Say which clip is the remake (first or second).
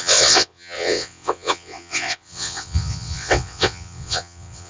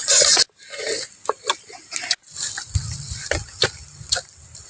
first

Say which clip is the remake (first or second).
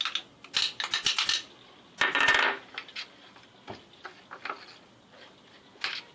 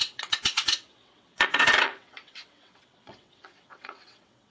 second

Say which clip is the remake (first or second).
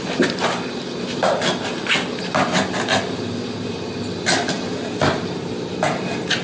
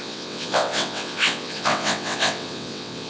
second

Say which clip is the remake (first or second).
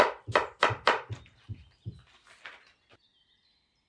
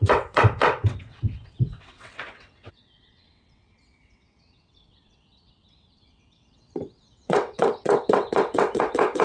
second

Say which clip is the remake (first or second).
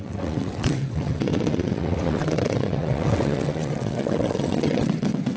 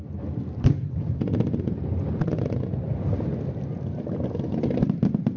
first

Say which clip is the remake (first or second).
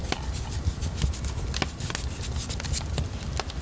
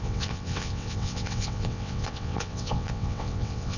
second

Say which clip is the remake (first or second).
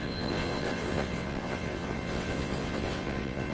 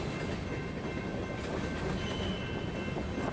first